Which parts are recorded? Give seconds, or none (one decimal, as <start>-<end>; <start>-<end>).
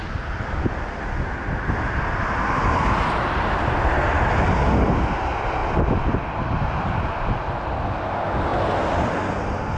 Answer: 0.0-9.8